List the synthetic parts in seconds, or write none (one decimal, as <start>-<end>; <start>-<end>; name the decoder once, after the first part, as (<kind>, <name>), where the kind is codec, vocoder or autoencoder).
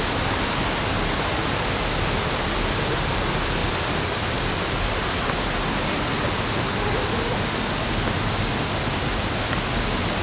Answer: none